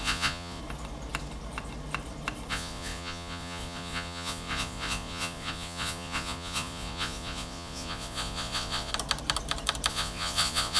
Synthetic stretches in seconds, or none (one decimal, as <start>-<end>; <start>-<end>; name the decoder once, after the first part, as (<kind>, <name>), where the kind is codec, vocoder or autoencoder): 0.0-0.6 (vocoder, Vocos); 2.5-8.9; 9.9-10.8